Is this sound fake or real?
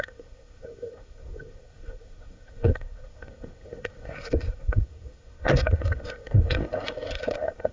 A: fake